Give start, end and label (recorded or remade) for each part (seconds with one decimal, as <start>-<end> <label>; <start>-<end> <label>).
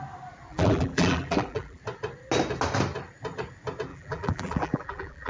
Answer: 0.0-0.5 recorded; 0.5-1.8 remade; 1.8-3.9 recorded; 3.9-5.3 remade